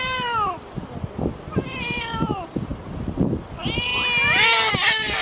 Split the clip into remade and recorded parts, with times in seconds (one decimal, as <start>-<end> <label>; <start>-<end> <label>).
0.0-2.7 remade; 2.7-3.5 recorded; 3.5-3.9 remade; 3.9-4.7 recorded; 4.7-5.2 remade